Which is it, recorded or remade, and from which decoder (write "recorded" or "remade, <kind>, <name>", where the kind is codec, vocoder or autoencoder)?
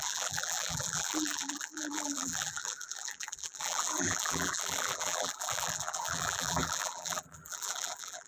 remade, vocoder, BigVGAN v2